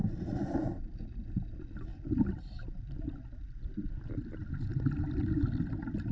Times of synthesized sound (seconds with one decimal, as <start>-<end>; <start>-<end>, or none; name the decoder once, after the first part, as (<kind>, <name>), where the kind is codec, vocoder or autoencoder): none